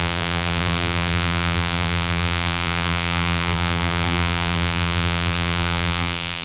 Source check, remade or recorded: remade